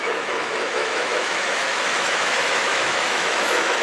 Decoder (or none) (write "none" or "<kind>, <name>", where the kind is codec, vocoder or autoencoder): autoencoder, DAC-VAE